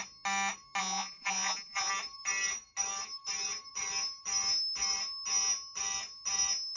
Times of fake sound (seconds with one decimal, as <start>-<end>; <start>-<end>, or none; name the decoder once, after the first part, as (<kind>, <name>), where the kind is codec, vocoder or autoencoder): 0.8-1.9 (vocoder, Vocos)